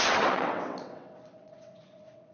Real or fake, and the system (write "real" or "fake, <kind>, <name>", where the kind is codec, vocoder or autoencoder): fake, vocoder, WaveNeXt